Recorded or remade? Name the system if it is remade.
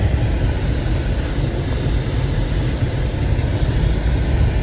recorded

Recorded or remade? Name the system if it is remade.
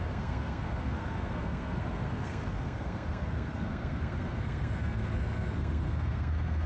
remade, codec, SNAC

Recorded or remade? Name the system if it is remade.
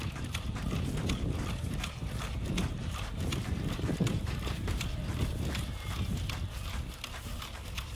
recorded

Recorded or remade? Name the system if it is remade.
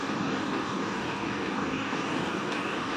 remade, codec, DAC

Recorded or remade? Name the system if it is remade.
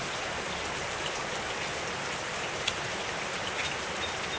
recorded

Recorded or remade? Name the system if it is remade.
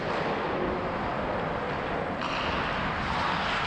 recorded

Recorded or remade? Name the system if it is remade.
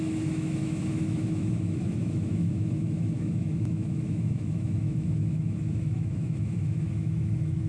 remade, autoencoder, DAC-VAE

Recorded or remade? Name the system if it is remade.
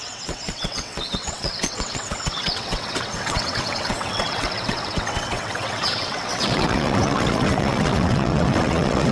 remade, vocoder, WaveNeXt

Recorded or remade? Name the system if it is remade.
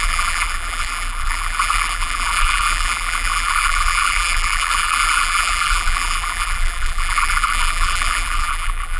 remade, vocoder, BigVGAN v2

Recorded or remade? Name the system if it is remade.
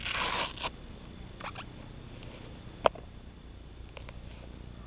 recorded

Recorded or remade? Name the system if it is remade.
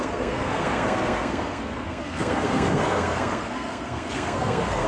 remade, codec, SNAC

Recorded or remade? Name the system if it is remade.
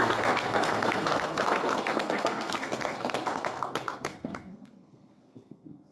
remade, codec, SNAC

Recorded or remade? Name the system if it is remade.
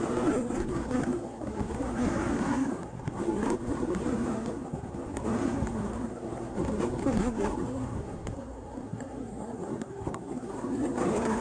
remade, codec, SNAC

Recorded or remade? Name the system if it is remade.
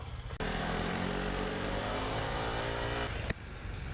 recorded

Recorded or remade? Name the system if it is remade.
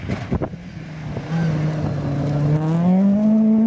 recorded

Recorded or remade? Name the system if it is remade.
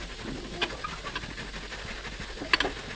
recorded